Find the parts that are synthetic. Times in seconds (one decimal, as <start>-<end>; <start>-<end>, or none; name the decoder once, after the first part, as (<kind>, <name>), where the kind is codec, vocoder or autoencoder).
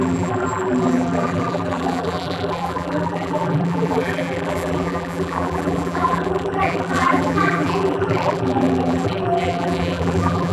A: 0.0-10.5 (vocoder, BigVGAN v2)